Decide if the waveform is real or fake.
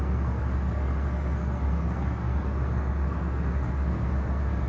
fake